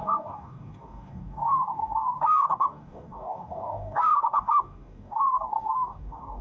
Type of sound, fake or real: fake